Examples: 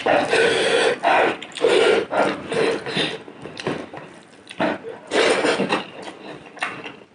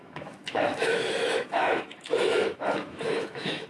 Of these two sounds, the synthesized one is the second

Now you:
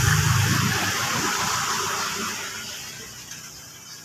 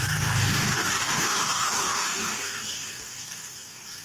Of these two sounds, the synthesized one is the second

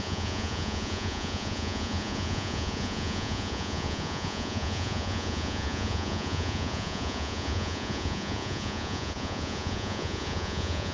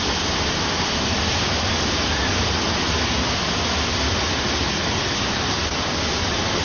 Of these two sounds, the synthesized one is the first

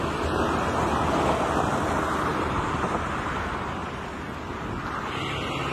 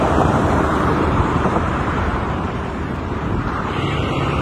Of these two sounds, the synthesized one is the second